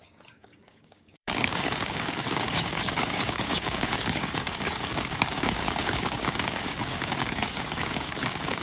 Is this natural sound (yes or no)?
no